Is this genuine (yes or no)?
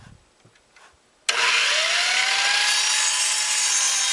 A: yes